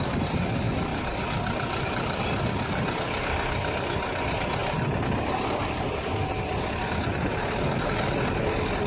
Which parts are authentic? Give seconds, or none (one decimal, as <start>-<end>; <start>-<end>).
0.0-8.9